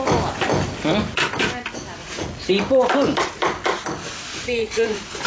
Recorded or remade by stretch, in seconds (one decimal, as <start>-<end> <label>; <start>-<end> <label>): 0.0-2.0 recorded; 2.0-2.5 remade; 2.5-4.3 recorded; 4.3-5.3 remade